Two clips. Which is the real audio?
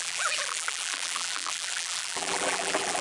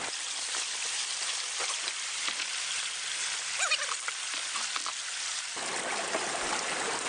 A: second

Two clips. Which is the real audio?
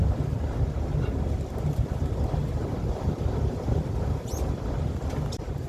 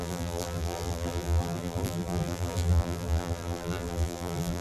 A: first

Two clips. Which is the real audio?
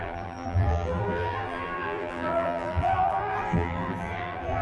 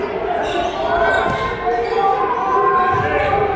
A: second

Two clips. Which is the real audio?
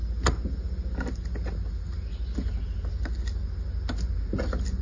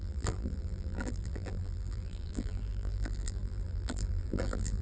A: first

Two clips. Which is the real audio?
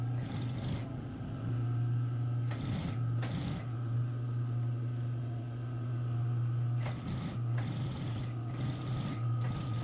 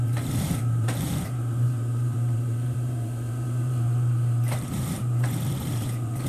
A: first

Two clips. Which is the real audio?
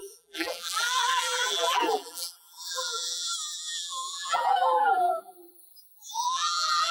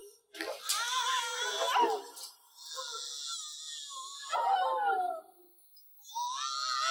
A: second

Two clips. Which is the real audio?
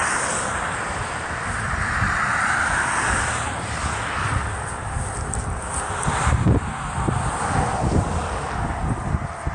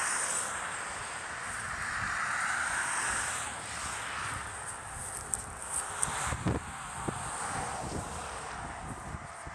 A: second